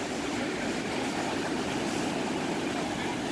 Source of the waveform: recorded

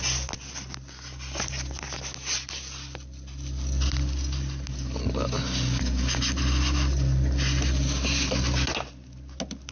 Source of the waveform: recorded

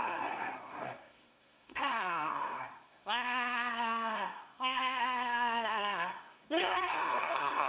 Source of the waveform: remade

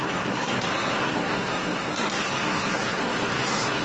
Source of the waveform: remade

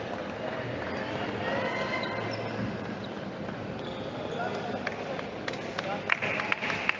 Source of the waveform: recorded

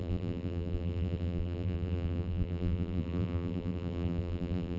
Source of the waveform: remade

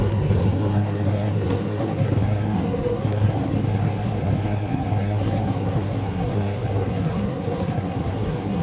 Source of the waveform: remade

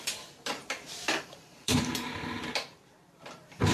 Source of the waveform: remade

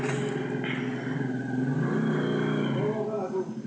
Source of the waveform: recorded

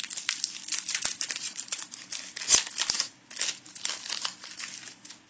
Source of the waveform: recorded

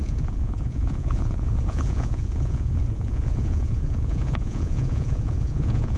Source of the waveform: remade